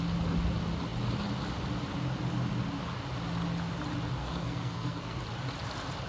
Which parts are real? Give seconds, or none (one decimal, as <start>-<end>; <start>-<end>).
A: 0.0-4.2; 5.2-6.1